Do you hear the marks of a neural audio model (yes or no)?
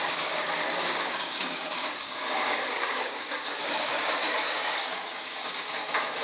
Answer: yes